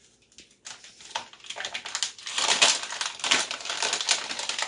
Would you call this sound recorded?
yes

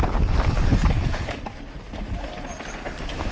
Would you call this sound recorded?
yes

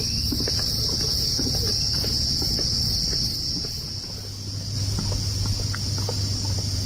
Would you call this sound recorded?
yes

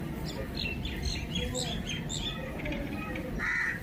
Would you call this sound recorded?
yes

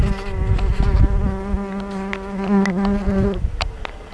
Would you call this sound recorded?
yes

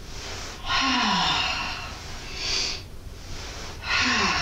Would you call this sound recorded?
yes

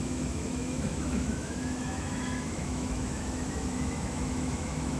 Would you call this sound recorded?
no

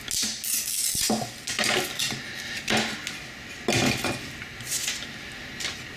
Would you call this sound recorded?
yes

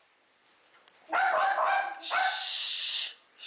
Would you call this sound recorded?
yes